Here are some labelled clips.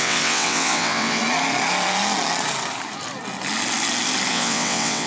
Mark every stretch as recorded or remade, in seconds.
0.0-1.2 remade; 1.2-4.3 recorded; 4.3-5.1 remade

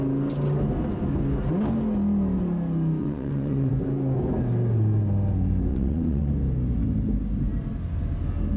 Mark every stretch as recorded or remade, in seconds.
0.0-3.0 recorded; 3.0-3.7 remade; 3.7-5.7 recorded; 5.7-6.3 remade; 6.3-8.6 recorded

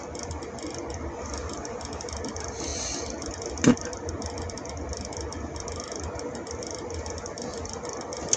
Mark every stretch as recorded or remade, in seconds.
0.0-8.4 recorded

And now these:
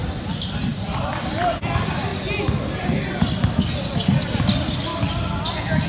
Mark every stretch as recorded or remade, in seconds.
0.0-5.9 recorded

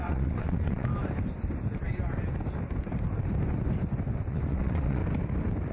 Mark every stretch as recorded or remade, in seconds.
0.0-0.9 remade; 0.9-4.3 recorded; 4.3-5.0 remade; 5.0-5.7 recorded

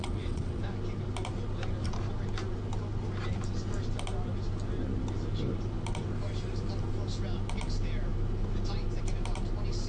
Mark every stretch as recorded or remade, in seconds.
0.0-0.6 remade; 0.6-9.9 recorded